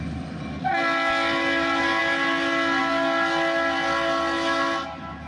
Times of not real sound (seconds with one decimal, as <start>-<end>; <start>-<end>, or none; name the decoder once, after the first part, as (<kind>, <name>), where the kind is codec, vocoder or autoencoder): none